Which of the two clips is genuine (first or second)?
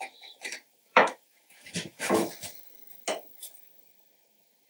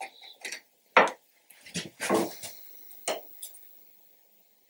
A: second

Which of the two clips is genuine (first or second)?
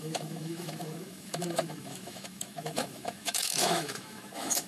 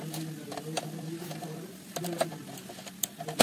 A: second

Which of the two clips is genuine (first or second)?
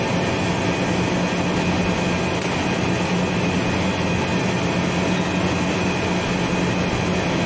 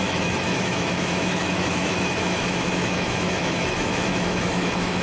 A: first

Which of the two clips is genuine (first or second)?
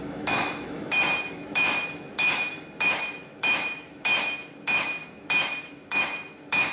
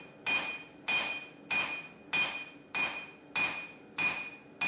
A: second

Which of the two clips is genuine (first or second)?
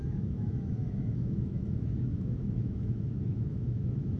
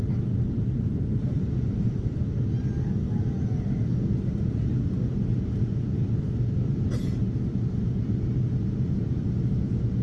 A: second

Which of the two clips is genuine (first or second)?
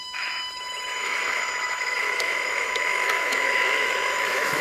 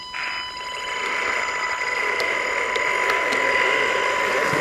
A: second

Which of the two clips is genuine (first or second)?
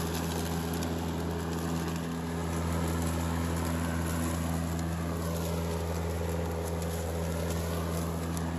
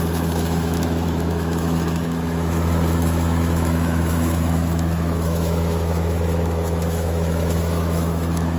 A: first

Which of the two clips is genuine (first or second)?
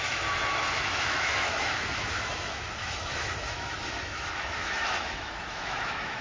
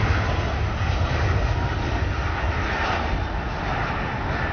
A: second